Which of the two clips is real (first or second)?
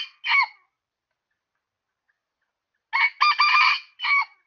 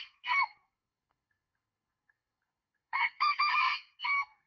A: first